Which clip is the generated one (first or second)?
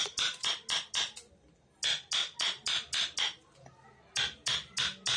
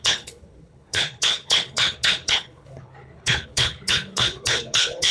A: second